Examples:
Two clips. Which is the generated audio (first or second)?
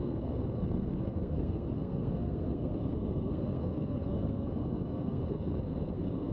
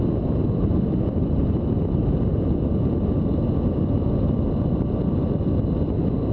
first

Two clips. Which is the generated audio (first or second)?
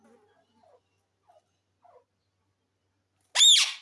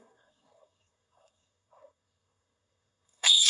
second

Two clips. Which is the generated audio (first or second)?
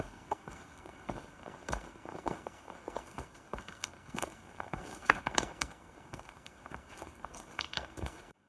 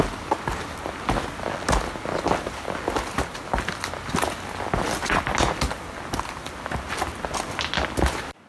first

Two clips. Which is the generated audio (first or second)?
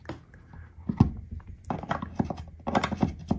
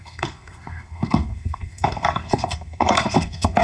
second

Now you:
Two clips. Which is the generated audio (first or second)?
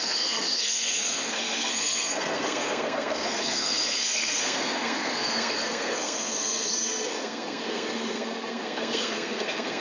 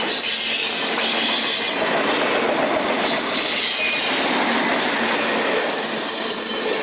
first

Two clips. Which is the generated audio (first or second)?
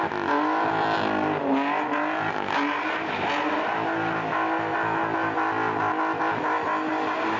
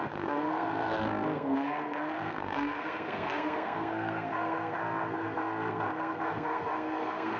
second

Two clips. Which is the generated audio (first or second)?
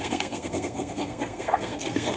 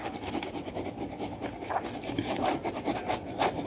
first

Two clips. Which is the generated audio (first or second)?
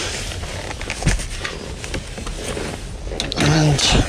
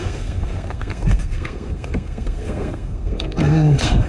second